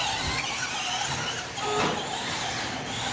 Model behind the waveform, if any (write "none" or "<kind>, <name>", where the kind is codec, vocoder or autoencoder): none